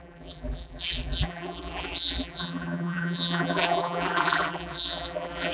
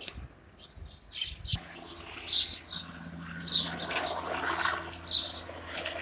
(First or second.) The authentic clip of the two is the second